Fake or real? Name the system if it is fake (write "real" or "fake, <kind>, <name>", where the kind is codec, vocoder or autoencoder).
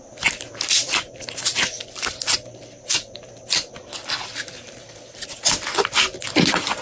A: real